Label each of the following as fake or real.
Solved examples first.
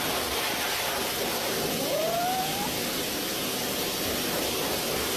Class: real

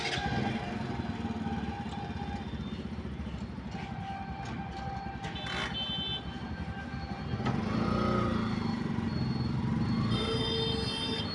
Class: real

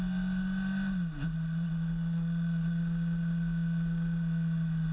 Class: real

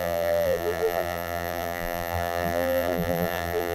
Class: fake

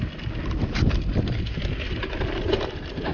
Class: real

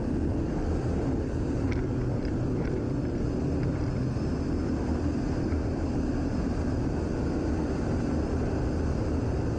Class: fake